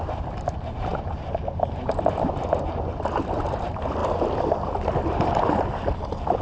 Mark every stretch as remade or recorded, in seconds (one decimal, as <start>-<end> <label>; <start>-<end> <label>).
0.0-6.4 recorded